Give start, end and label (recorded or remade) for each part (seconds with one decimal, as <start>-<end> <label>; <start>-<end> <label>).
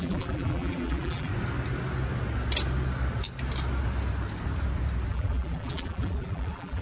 0.0-1.3 remade; 1.3-5.1 recorded; 5.1-6.8 remade